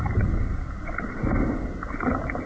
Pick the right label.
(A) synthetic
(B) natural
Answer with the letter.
B